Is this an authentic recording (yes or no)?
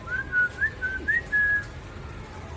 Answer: yes